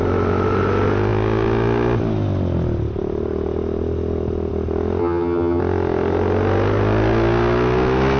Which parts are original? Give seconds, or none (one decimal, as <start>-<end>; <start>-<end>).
0.0-5.0; 5.6-8.2